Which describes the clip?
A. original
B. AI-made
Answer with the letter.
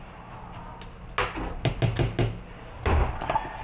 A